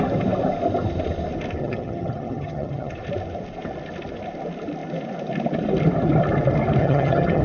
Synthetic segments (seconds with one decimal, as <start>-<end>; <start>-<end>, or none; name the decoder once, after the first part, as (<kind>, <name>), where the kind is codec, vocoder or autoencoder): 1.6-2.9 (vocoder, HiFi-GAN); 6.8-7.4